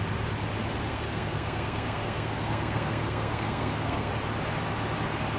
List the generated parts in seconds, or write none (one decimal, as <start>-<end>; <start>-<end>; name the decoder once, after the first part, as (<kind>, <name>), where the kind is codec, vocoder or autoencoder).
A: 0.9-4.1 (codec, SNAC)